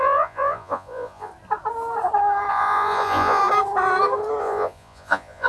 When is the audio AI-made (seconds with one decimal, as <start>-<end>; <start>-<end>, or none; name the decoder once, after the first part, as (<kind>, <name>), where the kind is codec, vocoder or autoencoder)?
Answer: 0.0-1.3 (vocoder, Vocos); 2.5-3.4; 4.4-5.5